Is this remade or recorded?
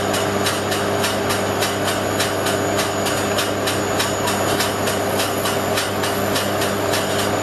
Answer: recorded